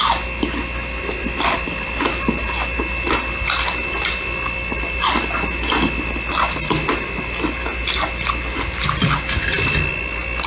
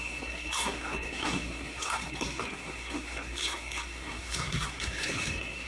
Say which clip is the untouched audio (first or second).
first